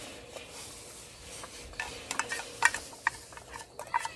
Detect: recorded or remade recorded